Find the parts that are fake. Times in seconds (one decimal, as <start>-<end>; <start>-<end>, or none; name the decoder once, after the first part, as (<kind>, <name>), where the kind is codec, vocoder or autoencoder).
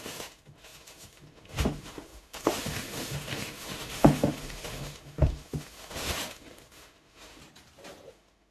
0.0-7.4 (autoencoder, DAC-VAE); 8.1-8.5